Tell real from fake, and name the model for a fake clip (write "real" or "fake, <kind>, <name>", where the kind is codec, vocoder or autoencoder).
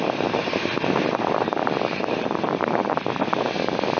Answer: fake, vocoder, BigVGAN v2